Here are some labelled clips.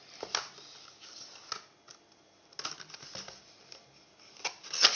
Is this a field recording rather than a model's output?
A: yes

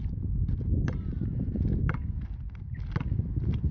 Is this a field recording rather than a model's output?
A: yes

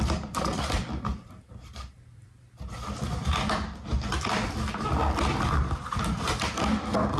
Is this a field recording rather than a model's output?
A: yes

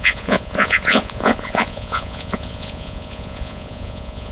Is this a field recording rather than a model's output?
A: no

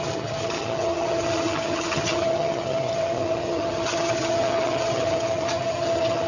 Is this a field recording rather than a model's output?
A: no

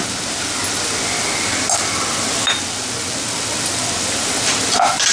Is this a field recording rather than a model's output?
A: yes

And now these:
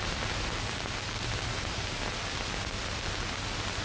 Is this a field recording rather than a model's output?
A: yes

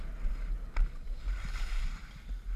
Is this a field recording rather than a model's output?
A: yes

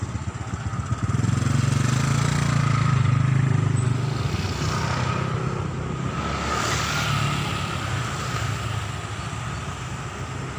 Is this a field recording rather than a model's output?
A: yes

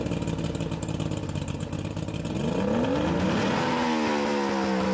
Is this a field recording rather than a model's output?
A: yes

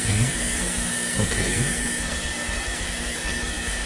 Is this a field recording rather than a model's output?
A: no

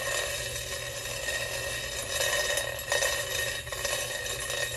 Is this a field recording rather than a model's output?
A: yes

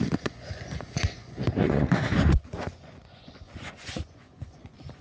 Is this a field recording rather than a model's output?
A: no